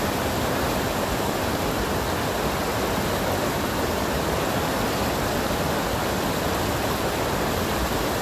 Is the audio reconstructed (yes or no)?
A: no